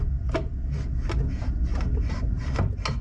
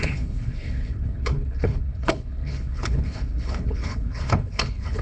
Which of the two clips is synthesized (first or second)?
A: second